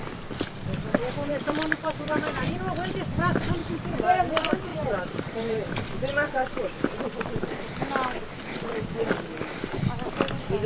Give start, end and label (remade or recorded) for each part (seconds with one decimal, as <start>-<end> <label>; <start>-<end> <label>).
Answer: 0.0-1.3 recorded; 1.3-2.4 remade; 2.4-3.6 recorded; 3.6-4.3 remade; 4.3-4.7 recorded; 4.7-5.6 remade; 5.6-10.7 recorded